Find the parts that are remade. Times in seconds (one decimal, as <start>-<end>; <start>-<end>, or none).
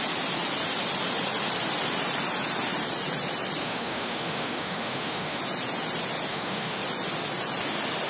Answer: 3.6-5.4; 6.3-6.8